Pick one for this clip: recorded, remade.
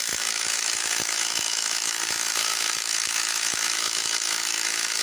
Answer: remade